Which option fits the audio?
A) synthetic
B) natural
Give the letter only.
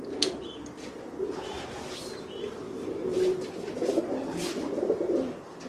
B